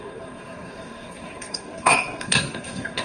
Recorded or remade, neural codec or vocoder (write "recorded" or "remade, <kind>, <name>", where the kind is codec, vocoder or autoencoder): remade, codec, SNAC